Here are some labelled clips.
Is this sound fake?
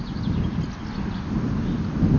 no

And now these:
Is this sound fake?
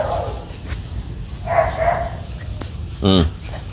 no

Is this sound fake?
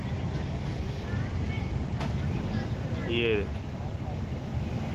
no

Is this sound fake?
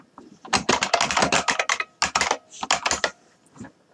no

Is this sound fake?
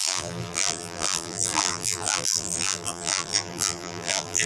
yes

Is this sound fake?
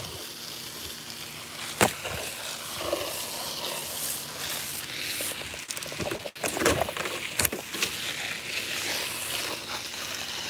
no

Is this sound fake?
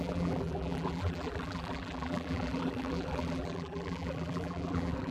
yes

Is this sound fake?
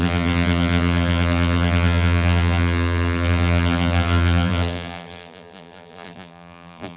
yes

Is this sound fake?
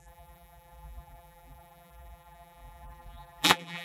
yes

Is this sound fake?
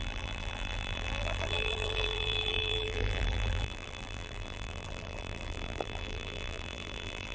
yes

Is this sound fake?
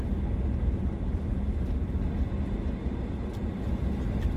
no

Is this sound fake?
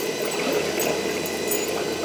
no